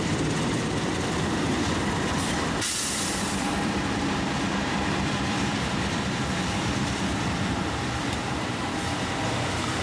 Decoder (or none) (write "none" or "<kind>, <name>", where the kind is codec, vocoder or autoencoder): vocoder, BigVGAN v2